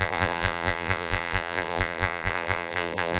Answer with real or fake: fake